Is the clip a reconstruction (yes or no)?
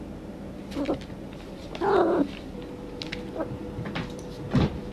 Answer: no